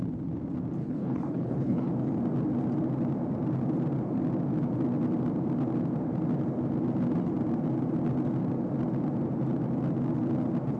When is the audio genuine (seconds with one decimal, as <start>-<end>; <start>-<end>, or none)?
0.0-0.8; 1.9-10.8

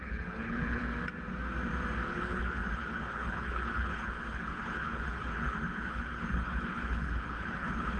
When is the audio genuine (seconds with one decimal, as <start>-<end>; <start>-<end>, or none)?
0.8-2.1